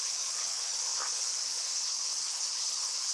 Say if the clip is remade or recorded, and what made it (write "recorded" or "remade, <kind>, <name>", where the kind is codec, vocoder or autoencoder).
remade, codec, HILCodec